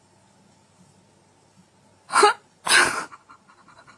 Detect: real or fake real